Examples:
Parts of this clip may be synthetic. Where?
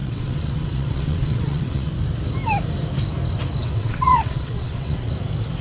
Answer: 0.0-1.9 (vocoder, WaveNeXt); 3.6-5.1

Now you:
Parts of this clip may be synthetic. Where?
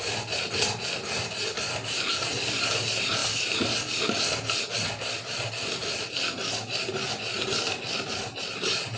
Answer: none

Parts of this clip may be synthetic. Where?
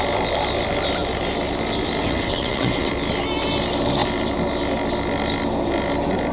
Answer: 2.0-2.9 (vocoder, WaveNeXt)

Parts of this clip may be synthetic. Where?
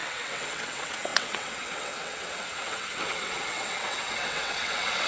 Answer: 0.0-5.1 (vocoder, WaveNeXt)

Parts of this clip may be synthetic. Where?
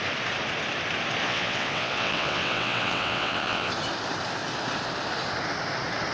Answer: 1.2-3.7 (vocoder, WaveNeXt)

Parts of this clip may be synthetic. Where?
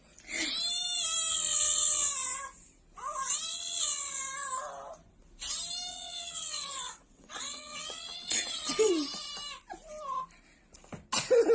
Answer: 1.3-2.1 (vocoder, WaveNeXt); 3.5-4.2; 5.9-8.9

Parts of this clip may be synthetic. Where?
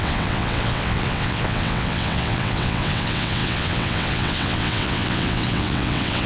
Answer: 0.0-6.3 (vocoder, WaveNeXt)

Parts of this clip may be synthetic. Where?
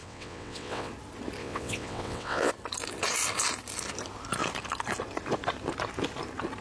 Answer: 0.0-0.9 (vocoder, WaveNeXt); 1.4-2.5